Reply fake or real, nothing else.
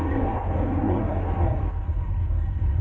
fake